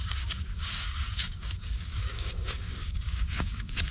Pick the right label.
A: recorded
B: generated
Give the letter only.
B